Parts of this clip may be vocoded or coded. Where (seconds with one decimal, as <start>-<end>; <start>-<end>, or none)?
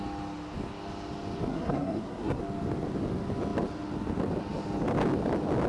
1.5-2.4